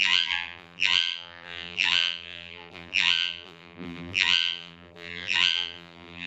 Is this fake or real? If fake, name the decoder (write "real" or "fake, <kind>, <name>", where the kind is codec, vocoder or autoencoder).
fake, vocoder, BigVGAN v2